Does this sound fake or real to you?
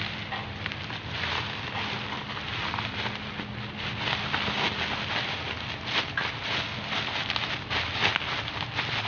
real